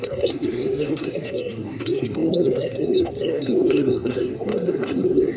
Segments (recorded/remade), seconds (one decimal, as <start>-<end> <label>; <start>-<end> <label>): 0.0-5.4 remade